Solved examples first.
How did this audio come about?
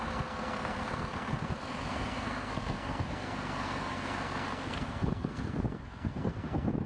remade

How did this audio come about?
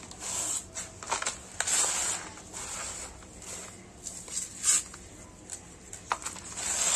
recorded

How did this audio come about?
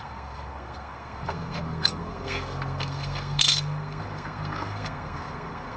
remade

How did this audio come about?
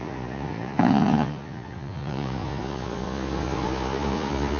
remade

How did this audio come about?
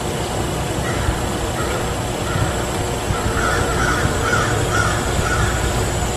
recorded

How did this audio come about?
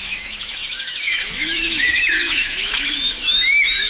remade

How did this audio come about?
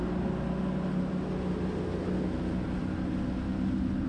recorded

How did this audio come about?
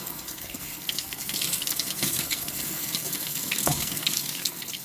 remade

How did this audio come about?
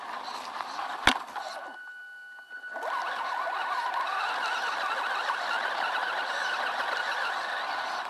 recorded